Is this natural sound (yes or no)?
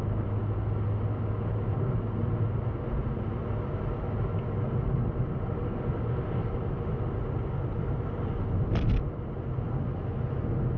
yes